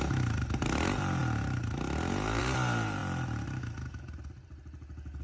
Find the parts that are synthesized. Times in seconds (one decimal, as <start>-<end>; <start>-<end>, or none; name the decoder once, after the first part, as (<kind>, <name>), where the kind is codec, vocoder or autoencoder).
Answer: none